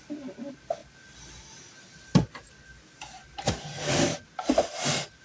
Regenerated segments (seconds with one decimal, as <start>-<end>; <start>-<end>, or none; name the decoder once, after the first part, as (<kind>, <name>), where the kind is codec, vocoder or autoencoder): none